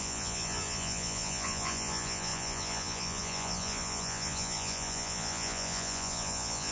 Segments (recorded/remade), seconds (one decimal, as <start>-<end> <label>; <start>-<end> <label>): 0.0-6.7 remade